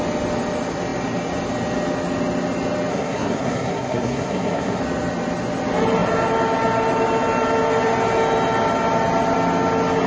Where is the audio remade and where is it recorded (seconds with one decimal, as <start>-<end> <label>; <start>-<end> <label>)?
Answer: 0.0-2.9 recorded; 2.9-4.8 remade; 4.8-10.1 recorded